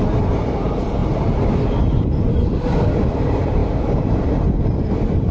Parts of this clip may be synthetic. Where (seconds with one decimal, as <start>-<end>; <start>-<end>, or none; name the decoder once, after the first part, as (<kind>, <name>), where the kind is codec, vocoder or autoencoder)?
none